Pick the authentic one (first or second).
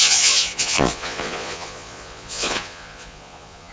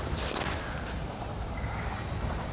second